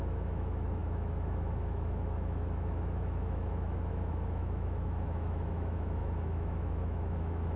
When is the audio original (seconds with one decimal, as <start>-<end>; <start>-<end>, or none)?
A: none